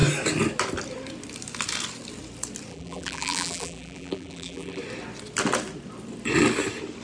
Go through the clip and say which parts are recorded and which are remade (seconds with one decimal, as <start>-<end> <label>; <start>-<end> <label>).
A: 0.0-2.7 recorded; 2.7-4.8 remade; 4.8-7.0 recorded